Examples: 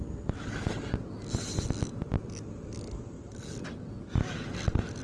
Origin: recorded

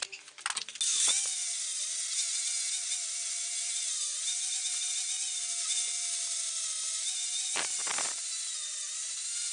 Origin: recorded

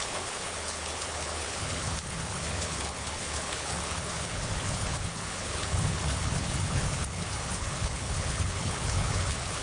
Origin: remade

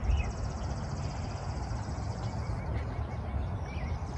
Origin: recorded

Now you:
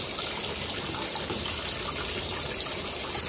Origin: recorded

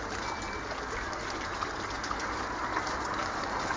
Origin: recorded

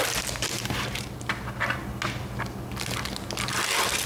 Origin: recorded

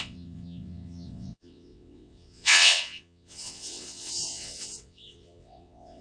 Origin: remade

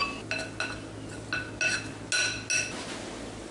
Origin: recorded